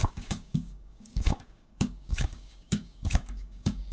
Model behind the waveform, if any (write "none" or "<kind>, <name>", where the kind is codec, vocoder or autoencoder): codec, DAC